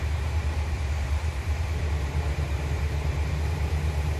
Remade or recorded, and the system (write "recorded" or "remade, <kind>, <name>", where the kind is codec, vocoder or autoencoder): remade, vocoder, BigVGAN v2